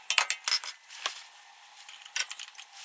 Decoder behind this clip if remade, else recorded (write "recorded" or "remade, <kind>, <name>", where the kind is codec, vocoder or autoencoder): recorded